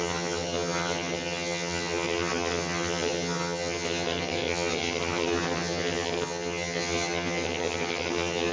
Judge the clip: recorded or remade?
remade